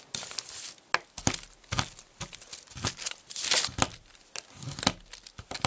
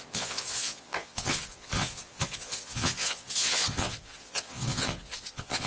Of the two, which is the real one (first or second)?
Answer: first